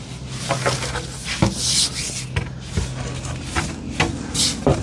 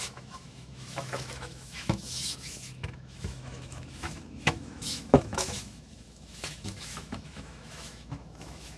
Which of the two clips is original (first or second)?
first